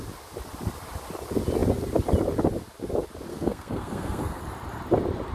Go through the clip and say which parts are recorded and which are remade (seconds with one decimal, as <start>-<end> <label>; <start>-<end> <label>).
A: 0.0-3.3 recorded; 3.3-4.4 remade; 4.4-5.3 recorded